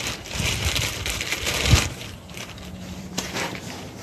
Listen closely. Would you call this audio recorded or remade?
remade